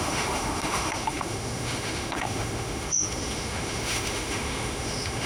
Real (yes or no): no